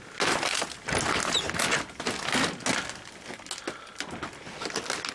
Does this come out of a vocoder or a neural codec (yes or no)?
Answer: no